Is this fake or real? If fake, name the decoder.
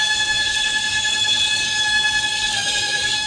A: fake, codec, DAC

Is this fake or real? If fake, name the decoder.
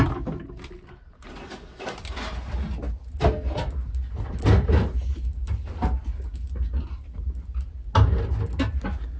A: real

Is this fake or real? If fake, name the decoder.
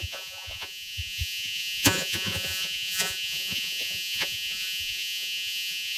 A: fake, vocoder, Vocos